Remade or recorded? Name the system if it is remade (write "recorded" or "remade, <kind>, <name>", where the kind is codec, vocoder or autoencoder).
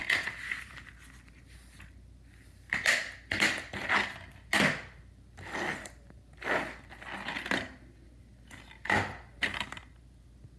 recorded